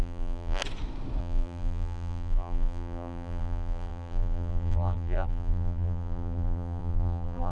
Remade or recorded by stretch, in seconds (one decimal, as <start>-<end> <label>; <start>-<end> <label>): 0.0-0.6 remade; 0.6-1.2 recorded; 1.2-7.5 remade